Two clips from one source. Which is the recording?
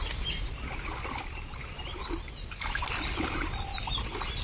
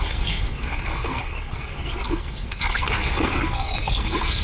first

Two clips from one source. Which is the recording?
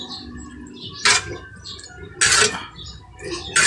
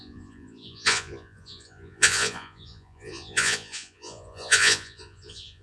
first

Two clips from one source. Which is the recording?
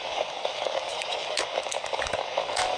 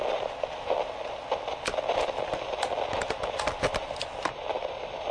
second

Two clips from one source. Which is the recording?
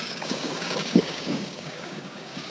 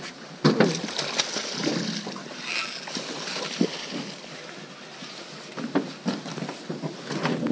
second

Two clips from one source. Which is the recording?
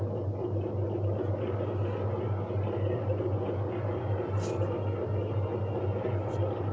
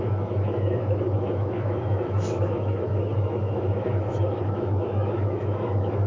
first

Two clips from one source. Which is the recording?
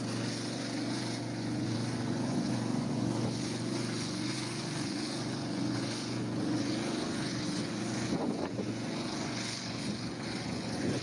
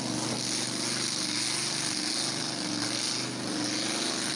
second